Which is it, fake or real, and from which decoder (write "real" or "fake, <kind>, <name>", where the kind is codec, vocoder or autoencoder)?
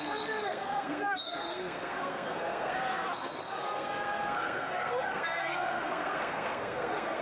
fake, codec, SNAC